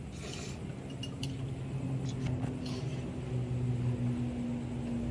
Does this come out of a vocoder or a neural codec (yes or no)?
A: no